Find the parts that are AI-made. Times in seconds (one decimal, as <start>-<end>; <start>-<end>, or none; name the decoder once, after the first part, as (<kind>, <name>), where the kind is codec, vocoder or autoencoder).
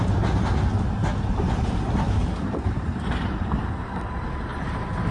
1.1-1.7 (vocoder, BigVGAN v2); 2.2-3.4; 4.5-5.1